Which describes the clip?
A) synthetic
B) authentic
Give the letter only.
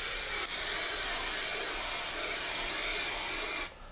B